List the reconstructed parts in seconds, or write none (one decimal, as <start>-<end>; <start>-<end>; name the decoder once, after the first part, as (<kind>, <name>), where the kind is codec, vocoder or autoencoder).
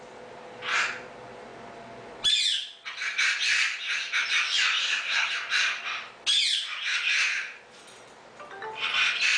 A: 4.8-5.3 (codec, SNAC)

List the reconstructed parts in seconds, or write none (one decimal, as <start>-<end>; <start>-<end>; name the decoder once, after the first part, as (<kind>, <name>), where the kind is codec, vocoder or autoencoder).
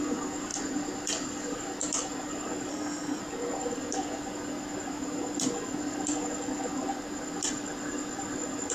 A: 2.7-3.2 (codec, SNAC)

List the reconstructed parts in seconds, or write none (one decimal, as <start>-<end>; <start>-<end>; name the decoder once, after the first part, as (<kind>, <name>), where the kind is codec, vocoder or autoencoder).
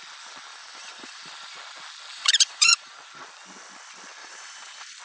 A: 0.5-1.3 (vocoder, BigVGAN v2); 2.1-2.9; 4.2-5.0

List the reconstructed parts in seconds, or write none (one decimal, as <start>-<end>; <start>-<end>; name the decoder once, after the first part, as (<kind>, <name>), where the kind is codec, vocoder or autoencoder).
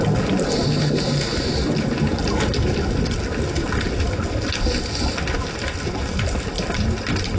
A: none